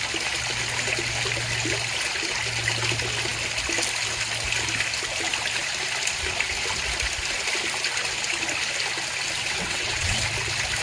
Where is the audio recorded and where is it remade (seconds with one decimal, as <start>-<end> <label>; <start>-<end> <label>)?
0.0-9.4 recorded; 9.4-10.2 remade; 10.2-10.8 recorded